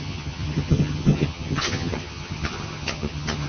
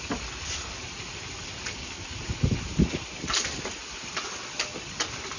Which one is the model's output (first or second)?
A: first